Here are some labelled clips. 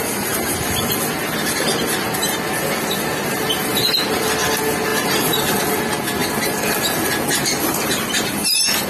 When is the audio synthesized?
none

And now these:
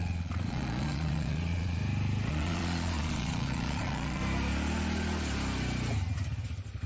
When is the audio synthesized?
0.0-1.8; 2.3-4.2

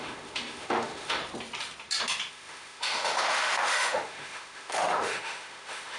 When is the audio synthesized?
0.0-1.2; 2.3-6.0

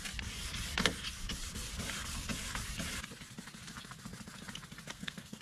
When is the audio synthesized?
4.9-5.4

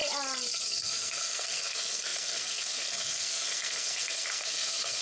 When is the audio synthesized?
0.6-5.0

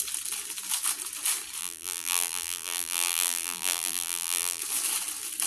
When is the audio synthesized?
1.6-4.6

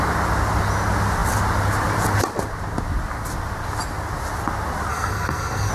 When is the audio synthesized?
4.9-5.7